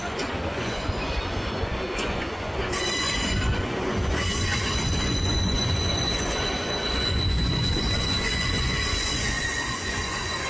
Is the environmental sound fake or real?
fake